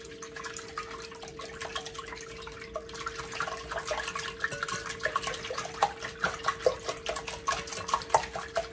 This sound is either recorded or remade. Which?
recorded